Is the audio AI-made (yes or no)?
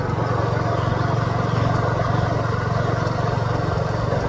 no